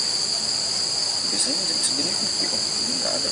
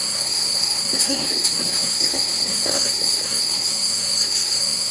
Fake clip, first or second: second